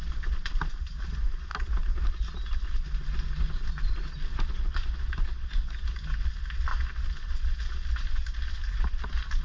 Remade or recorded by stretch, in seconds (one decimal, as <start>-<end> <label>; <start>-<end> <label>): 0.0-9.4 recorded